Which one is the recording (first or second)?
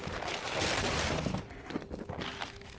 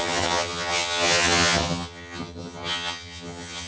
first